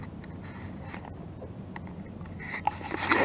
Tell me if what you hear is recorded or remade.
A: recorded